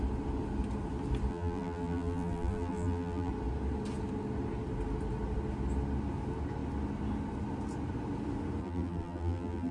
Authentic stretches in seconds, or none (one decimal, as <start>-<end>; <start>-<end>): 0.0-1.3; 3.3-8.6